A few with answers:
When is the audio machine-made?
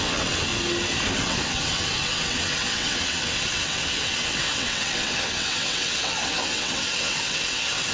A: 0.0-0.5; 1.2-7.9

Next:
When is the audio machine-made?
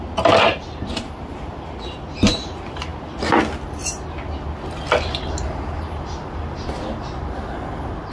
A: 0.5-1.3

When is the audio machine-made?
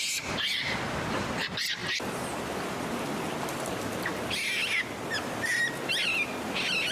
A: none